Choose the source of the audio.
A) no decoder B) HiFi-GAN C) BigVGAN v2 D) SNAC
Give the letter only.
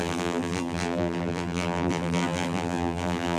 C